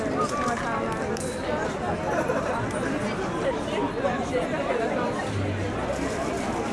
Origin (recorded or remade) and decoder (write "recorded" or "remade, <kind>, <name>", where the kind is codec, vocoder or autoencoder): recorded